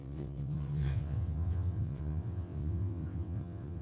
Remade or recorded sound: remade